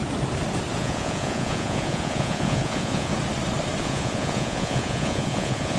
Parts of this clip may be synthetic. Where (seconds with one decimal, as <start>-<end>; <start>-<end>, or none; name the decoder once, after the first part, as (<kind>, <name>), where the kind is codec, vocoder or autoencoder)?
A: 0.8-3.1 (vocoder, Vocos); 3.8-5.8